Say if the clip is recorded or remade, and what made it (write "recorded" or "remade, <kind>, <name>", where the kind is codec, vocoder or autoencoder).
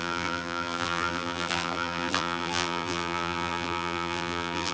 remade, vocoder, BigVGAN v2